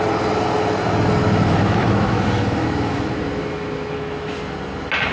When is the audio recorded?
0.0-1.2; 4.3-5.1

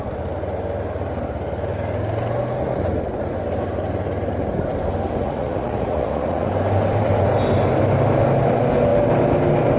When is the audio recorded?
0.0-5.2; 6.5-9.8

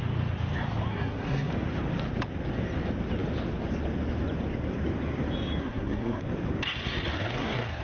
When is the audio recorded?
0.0-0.9; 1.5-5.6; 6.2-7.1